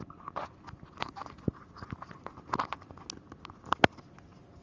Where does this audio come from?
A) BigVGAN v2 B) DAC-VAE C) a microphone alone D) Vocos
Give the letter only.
C